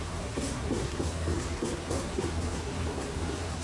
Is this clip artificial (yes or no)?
yes